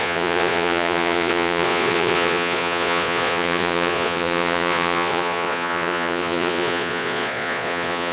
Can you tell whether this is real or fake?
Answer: fake